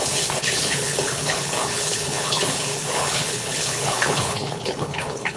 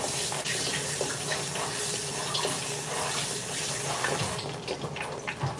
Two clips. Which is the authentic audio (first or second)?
second